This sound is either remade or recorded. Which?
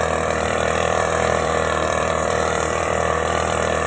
remade